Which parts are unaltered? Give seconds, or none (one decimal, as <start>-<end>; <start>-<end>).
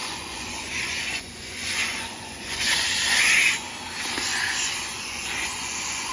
3.7-4.3